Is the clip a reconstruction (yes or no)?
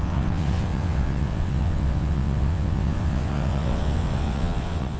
yes